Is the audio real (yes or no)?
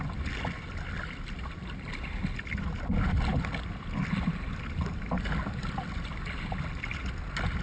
yes